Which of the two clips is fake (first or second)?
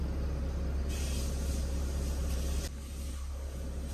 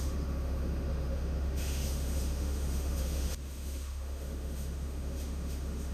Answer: second